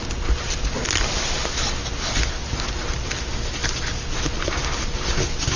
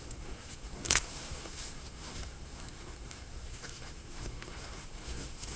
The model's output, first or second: second